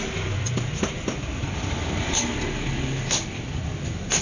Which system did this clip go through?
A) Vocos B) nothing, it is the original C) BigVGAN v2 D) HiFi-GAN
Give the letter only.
B